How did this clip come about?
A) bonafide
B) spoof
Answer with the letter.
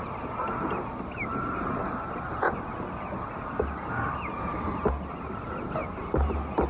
A